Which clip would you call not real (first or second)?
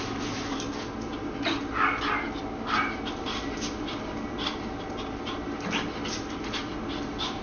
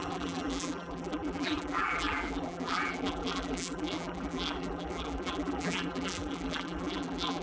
second